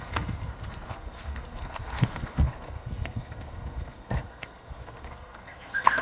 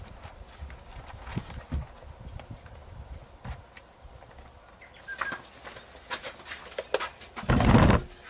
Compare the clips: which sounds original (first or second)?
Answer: second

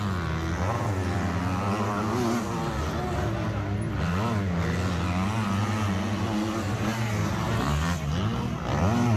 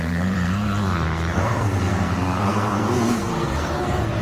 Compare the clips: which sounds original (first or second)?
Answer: first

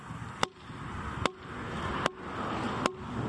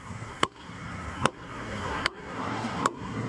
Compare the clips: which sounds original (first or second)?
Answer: first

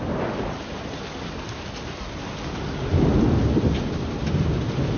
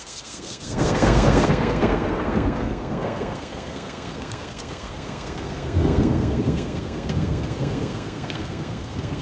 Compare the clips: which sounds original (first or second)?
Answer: first